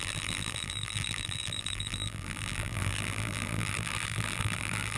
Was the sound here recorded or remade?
remade